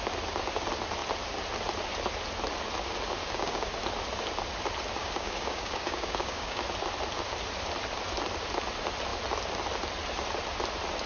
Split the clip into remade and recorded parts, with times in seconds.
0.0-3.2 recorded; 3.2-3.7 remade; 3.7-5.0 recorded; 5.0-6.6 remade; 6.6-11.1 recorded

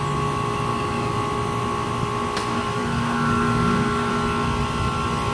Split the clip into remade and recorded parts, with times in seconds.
0.0-0.7 recorded; 0.7-1.2 remade; 1.2-2.8 recorded; 2.8-4.1 remade; 4.1-5.3 recorded

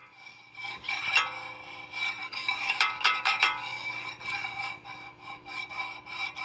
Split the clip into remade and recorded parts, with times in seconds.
0.0-1.0 remade; 1.0-2.2 recorded; 2.2-5.7 remade; 5.7-6.4 recorded